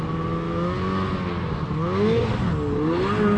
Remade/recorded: recorded